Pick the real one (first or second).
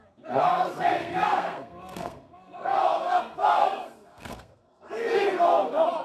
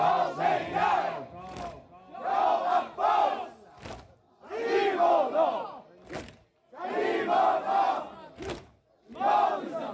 second